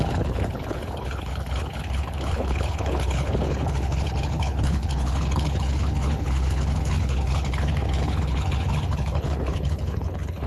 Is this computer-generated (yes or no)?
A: yes